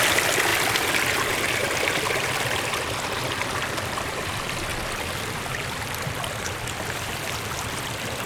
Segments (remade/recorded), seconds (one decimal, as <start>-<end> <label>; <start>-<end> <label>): 0.0-8.3 recorded